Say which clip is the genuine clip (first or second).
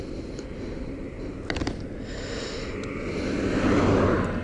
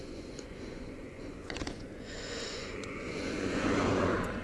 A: first